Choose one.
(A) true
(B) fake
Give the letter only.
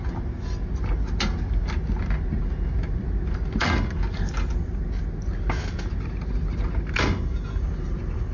A